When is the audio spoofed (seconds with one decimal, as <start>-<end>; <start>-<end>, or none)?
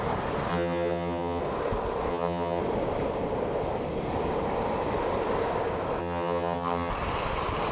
0.5-1.4; 2.1-2.6; 6.0-6.9